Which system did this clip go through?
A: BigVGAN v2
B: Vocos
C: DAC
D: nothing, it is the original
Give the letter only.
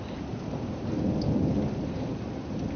D